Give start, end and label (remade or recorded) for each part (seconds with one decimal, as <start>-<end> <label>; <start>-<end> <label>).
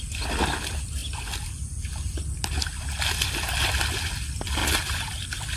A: 0.0-5.6 recorded